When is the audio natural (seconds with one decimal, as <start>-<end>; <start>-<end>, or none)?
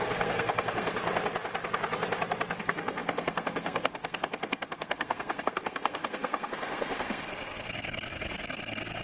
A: 1.0-2.6